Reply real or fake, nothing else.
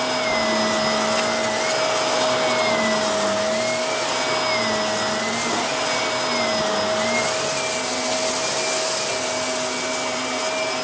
real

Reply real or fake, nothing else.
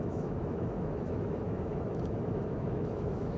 fake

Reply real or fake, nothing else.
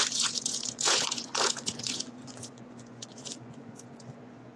fake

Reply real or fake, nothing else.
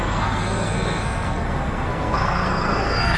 fake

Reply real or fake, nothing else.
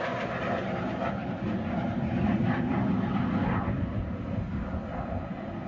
real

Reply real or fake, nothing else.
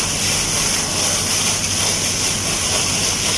fake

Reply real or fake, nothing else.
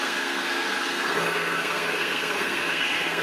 fake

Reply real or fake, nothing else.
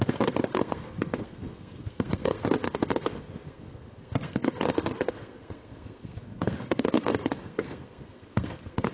fake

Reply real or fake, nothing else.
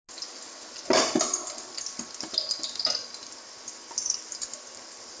real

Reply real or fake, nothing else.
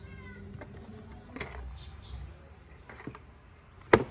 real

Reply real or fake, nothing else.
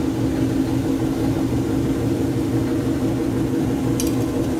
real